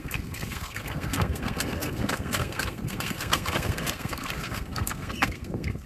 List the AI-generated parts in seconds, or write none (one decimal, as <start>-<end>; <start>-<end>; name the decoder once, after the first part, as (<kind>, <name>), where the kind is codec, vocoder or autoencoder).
0.0-5.9 (codec, SNAC)